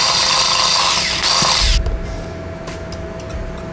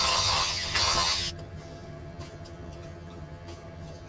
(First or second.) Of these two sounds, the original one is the first